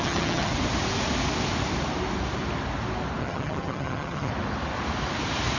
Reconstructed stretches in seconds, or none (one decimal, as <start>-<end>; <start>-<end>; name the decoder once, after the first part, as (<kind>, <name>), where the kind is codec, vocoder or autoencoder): 0.0-0.5 (vocoder, HiFi-GAN); 3.2-4.3